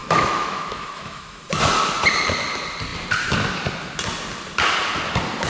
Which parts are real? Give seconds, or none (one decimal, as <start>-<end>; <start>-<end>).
1.6-5.5